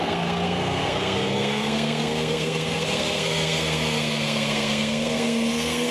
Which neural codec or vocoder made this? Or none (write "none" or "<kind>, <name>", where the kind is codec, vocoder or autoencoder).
codec, SNAC